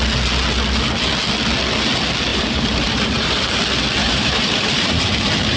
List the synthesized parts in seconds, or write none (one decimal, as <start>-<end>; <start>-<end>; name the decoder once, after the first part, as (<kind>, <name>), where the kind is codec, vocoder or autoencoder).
2.3-3.6 (vocoder, BigVGAN v2); 4.0-5.6